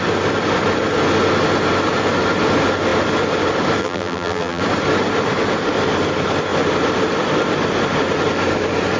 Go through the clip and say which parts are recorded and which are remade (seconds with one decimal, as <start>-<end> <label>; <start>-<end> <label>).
0.0-3.8 recorded; 3.8-4.6 remade; 4.6-9.0 recorded